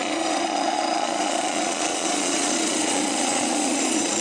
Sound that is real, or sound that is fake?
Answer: fake